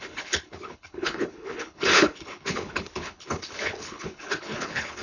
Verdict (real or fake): fake